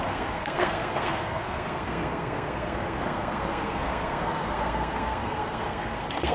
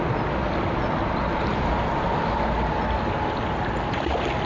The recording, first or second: second